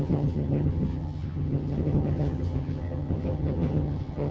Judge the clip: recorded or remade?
remade